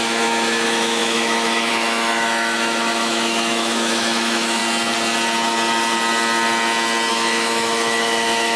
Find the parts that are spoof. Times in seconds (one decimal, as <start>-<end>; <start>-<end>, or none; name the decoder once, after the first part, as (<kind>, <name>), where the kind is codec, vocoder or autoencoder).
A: 0.0-4.6 (autoencoder, DAC-VAE); 7.1-8.6